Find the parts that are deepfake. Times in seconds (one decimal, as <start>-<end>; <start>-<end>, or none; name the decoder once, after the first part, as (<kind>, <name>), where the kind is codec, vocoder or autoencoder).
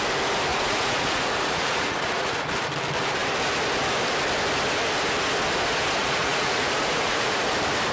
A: 0.5-2.5 (vocoder, Vocos); 6.0-7.5